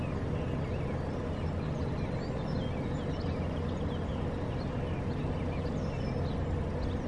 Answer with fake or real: real